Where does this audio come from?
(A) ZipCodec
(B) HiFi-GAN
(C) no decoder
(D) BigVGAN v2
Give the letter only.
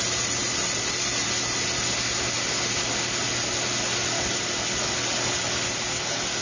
C